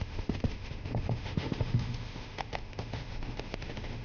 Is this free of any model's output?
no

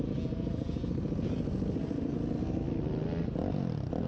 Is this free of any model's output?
yes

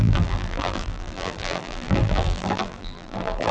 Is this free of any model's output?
no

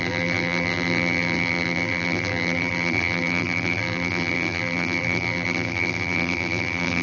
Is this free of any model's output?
no